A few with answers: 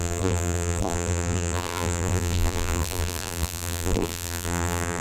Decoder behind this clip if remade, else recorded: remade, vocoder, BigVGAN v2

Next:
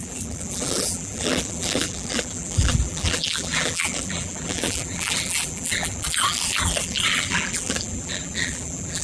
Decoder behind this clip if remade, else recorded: remade, vocoder, BigVGAN v2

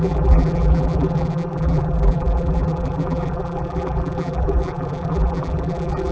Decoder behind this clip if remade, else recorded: remade, vocoder, BigVGAN v2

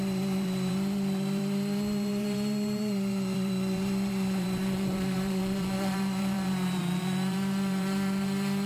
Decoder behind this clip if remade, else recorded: remade, vocoder, BigVGAN v2